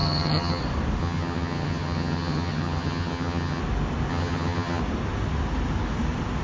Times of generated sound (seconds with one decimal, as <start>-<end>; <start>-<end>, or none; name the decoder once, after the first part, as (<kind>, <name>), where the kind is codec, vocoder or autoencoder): 0.0-0.6 (vocoder, HiFi-GAN); 1.0-3.6; 4.1-4.8